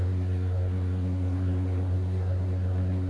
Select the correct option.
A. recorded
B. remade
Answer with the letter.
B